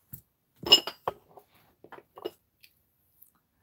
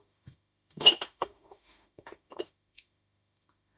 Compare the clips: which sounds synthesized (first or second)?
second